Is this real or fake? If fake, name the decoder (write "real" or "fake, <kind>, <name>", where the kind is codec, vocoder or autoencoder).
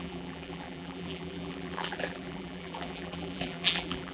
fake, vocoder, BigVGAN v2